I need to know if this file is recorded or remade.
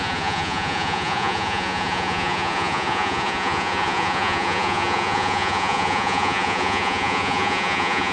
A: remade